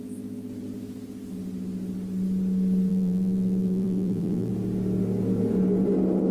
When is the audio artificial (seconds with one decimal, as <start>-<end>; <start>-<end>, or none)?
2.9-4.5